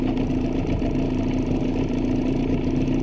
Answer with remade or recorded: recorded